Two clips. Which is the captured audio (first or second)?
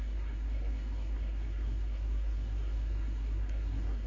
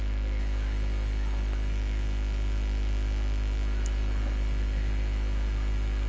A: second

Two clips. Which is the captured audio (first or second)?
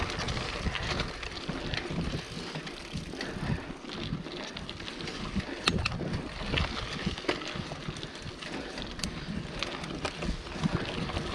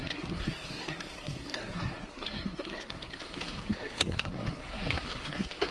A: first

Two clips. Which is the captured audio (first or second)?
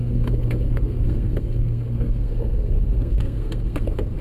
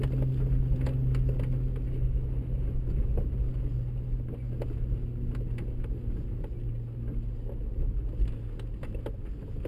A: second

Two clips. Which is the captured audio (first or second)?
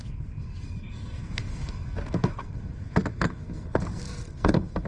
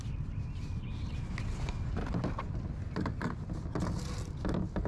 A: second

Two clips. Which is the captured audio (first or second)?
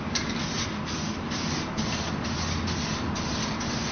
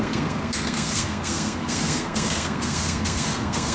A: first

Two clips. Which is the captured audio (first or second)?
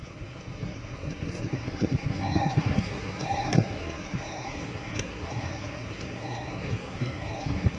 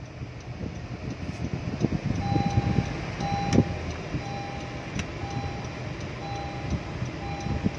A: second